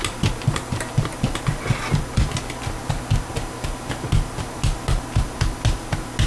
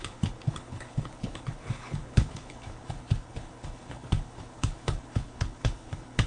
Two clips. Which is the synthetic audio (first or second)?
second